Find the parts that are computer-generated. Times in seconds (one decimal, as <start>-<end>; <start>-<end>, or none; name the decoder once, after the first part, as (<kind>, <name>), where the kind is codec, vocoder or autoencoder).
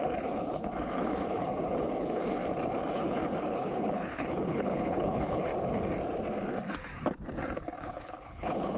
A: 0.0-2.4 (codec, HILCodec); 2.9-5.5; 7.8-8.8